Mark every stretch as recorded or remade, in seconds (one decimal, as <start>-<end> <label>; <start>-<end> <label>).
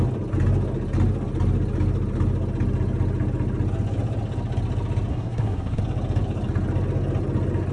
0.0-5.1 recorded; 5.1-5.8 remade; 5.8-7.7 recorded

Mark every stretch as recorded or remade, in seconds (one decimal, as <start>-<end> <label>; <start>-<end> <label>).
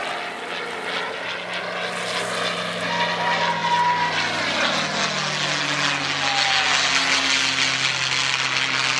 0.0-9.0 recorded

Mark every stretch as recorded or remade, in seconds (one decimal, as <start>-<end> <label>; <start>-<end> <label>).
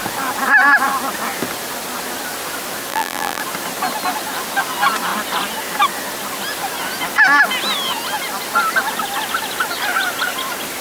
0.0-2.9 recorded; 2.9-3.4 remade; 3.4-10.8 recorded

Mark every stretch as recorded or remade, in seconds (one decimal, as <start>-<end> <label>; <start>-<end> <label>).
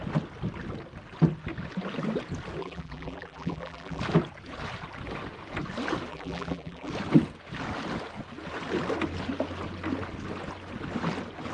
0.0-2.6 recorded; 2.6-4.0 remade; 4.0-6.1 recorded; 6.1-6.9 remade; 6.9-11.5 recorded